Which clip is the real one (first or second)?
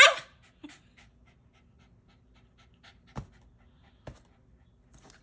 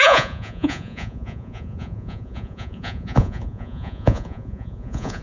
first